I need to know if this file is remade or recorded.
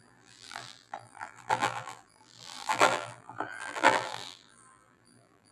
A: remade